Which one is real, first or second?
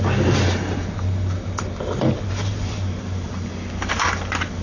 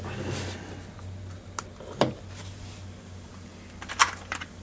second